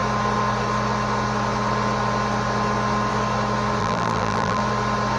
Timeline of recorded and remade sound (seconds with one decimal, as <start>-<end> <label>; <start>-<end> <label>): 0.0-3.8 recorded; 3.8-4.6 remade; 4.6-5.2 recorded